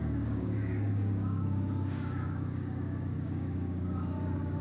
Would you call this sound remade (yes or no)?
yes